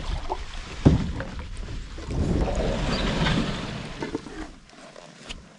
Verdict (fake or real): real